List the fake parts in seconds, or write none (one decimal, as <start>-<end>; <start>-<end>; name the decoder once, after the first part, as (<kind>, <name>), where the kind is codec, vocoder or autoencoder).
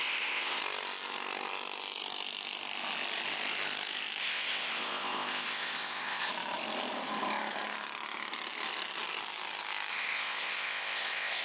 0.0-0.6 (codec, ZipCodec); 4.2-6.3; 9.9-11.4